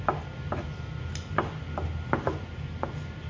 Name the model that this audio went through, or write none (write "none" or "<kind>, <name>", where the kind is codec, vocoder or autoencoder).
none